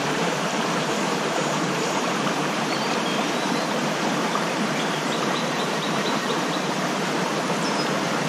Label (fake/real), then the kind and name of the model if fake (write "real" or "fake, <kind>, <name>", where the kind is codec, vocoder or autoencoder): fake, vocoder, BigVGAN v2